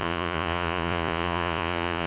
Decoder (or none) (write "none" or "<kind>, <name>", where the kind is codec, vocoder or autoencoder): vocoder, Vocos